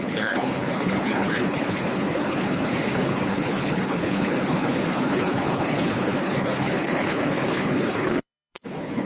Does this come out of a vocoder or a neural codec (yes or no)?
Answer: yes